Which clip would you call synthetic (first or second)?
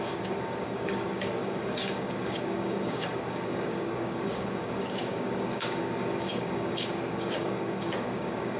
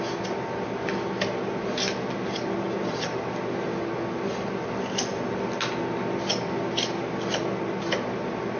first